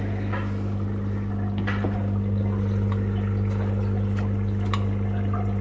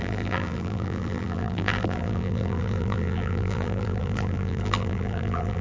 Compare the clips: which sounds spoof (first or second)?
second